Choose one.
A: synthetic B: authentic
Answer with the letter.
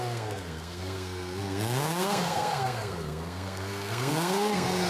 A